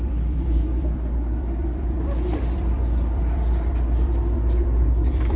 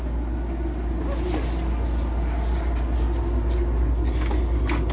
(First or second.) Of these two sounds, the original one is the second